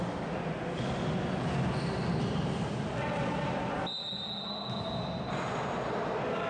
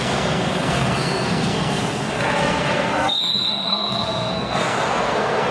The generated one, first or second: second